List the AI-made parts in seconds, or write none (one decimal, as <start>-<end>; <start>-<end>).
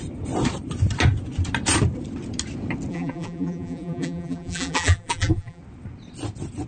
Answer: 2.9-5.6